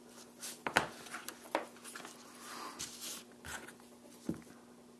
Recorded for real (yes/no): yes